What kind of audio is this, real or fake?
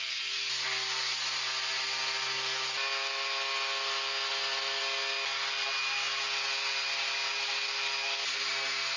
real